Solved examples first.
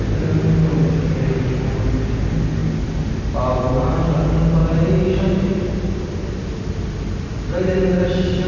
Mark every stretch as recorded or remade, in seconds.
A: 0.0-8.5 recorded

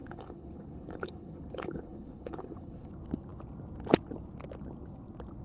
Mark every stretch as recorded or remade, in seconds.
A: 0.0-2.9 remade; 2.9-5.4 recorded

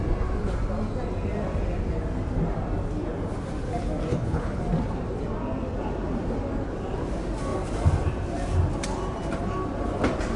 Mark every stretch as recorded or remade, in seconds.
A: 0.0-4.1 recorded; 4.1-4.6 remade; 4.6-10.4 recorded

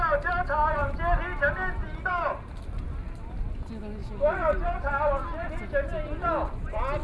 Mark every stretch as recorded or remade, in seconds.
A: 0.0-7.0 recorded